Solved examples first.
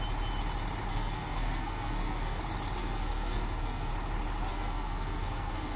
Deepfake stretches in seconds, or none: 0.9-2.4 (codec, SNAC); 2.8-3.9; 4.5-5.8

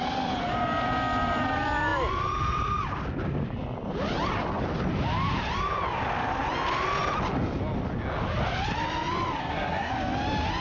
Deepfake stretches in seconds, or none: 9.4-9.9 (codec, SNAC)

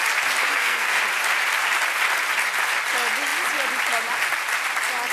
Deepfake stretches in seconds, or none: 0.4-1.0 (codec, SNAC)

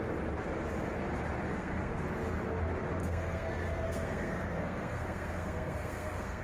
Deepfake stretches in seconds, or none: 1.5-2.0 (codec, SNAC); 3.0-6.4